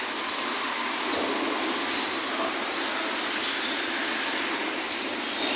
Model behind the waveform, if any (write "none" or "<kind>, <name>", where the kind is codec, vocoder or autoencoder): none